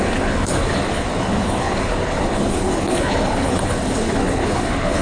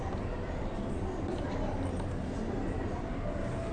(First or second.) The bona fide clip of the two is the second